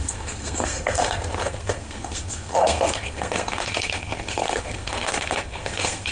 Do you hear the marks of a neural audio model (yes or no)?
yes